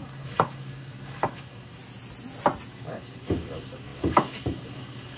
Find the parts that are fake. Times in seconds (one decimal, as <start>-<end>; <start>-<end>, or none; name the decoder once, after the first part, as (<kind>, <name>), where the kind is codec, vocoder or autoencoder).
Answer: 0.0-1.8 (codec, DAC); 2.7-5.2